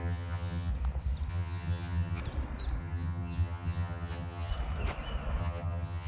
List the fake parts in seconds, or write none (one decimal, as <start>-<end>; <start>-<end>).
0.0-0.7; 1.3-2.2; 2.8-4.5; 5.4-6.1